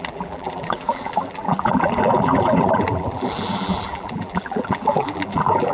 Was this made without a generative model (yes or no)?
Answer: no